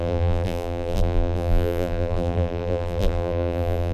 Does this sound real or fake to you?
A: fake